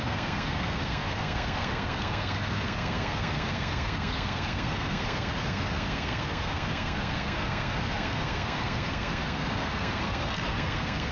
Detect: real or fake fake